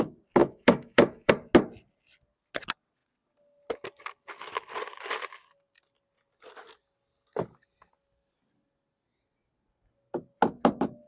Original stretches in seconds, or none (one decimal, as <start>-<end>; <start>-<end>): 0.0-0.4; 1.3-11.1